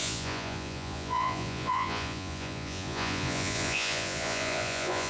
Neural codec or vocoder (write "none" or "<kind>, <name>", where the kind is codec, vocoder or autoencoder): vocoder, Vocos